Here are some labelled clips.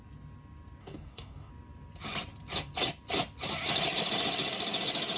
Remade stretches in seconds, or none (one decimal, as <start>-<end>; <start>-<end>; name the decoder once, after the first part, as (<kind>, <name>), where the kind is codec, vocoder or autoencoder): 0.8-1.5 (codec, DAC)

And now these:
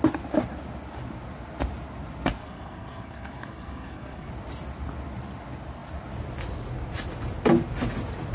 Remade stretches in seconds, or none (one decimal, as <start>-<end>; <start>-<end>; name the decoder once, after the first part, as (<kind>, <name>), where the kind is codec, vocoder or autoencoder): 2.4-4.3 (codec, SNAC)

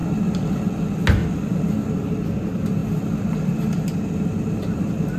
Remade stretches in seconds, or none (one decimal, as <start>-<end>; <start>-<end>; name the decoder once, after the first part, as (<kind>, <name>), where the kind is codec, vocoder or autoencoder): 1.2-1.9 (vocoder, BigVGAN v2)

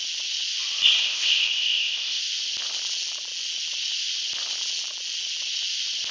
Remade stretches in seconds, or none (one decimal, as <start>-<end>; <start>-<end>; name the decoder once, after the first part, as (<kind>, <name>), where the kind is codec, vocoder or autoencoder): 1.0-2.2 (codec, ZipCodec)